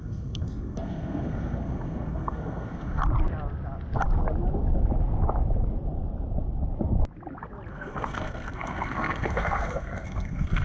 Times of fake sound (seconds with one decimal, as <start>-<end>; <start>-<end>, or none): 0.0-3.0; 7.7-10.6